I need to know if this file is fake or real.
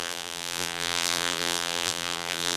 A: fake